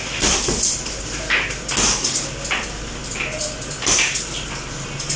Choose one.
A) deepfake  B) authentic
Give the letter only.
B